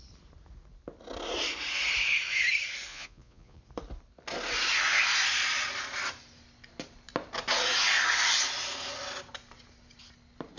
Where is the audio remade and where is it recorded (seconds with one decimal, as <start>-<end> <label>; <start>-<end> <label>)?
0.0-2.9 recorded; 2.9-3.6 remade; 3.6-10.6 recorded